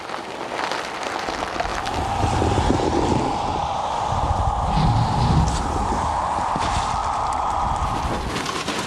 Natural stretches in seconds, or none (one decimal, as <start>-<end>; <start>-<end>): 0.0-8.9